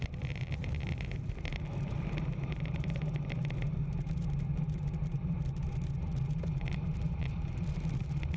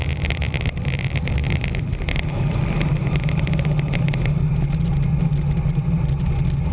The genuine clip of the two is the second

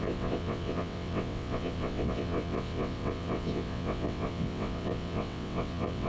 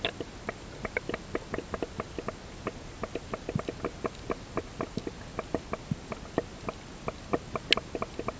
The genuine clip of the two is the second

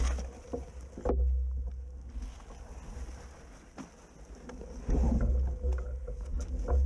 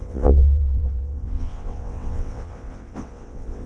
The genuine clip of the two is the first